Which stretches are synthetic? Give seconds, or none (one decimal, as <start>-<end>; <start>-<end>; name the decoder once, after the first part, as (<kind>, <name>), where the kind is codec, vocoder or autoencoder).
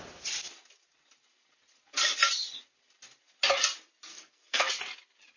4.1-4.7 (codec, SNAC)